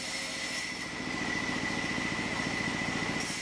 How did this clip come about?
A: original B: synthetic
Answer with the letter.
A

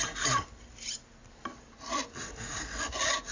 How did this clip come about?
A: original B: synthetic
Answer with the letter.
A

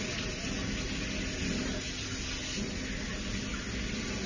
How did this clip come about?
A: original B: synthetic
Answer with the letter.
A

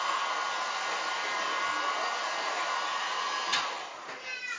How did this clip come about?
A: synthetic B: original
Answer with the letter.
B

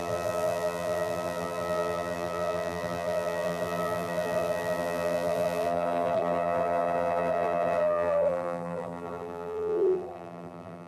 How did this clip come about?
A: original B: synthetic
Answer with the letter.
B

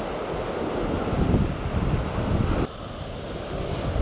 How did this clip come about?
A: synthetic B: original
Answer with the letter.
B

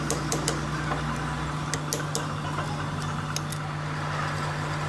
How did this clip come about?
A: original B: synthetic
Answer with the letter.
A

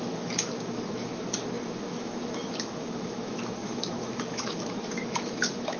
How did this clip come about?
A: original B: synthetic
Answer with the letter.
B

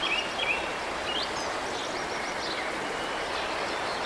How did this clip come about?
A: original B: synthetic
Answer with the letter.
A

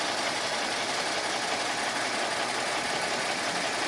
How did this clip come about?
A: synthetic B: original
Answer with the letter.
B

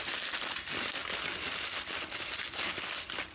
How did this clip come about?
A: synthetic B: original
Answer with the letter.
B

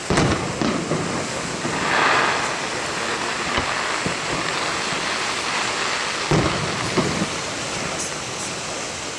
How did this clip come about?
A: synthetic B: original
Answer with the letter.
B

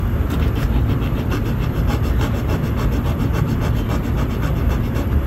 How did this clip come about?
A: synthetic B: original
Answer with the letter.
B